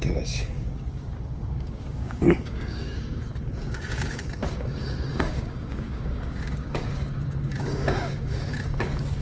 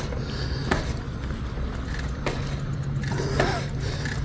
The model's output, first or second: first